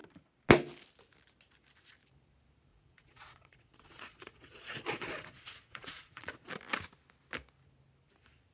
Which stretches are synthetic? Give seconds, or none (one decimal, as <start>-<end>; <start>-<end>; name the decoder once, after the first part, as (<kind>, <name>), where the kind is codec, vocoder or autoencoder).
2.7-6.5 (vocoder, Vocos)